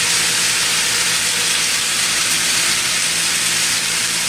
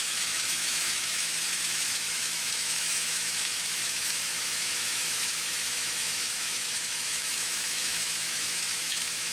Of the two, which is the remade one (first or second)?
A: second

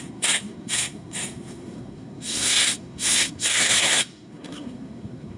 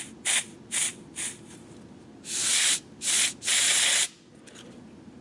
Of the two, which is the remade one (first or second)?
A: first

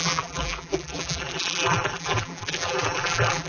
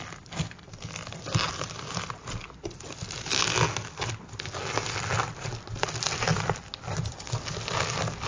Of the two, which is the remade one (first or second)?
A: first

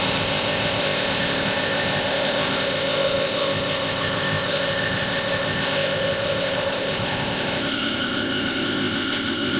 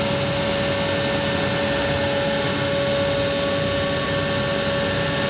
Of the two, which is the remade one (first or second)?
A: first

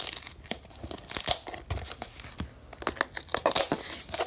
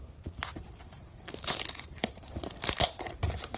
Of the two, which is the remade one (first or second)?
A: second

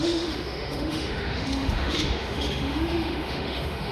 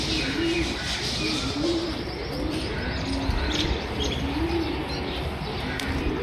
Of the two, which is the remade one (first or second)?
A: first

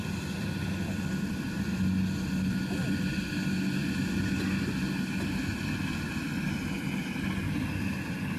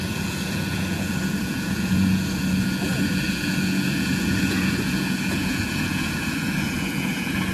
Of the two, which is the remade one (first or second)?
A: second